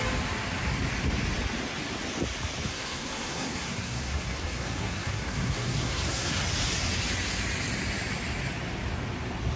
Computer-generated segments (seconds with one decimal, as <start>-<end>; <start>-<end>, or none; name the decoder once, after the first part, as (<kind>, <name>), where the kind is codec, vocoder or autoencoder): 2.7-6.4 (codec, SNAC)